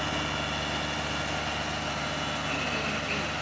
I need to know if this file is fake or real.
real